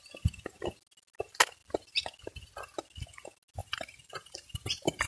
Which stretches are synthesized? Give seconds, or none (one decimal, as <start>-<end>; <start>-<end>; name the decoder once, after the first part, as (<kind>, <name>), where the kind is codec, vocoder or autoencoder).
3.6-5.1 (vocoder, BigVGAN v2)